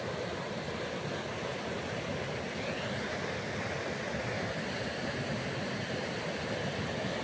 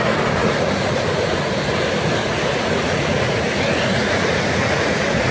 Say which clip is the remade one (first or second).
second